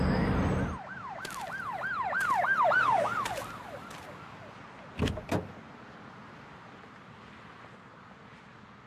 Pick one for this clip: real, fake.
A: real